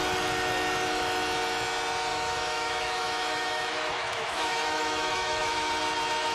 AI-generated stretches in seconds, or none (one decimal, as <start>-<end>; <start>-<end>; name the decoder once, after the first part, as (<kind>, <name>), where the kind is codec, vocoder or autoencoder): 2.1-5.7 (autoencoder, DAC-VAE)